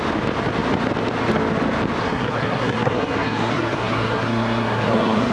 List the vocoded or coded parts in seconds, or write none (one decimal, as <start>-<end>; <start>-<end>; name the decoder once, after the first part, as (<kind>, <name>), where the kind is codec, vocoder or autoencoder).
2.0-5.3 (codec, SNAC)